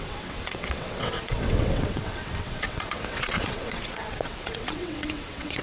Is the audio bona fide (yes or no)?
no